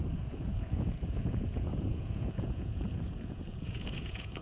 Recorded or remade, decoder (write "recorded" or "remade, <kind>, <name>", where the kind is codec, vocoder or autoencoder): remade, vocoder, Vocos